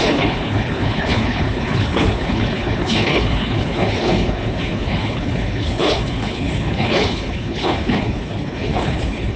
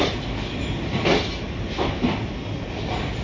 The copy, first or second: first